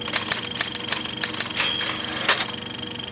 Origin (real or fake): real